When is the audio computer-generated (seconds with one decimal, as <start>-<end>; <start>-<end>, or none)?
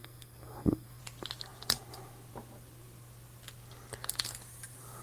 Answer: 0.0-1.0